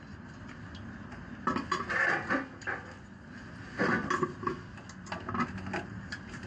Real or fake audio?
real